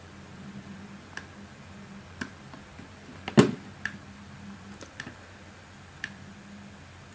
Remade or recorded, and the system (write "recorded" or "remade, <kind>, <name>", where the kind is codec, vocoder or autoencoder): recorded